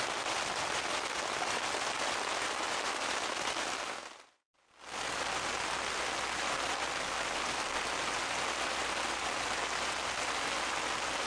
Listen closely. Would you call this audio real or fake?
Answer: real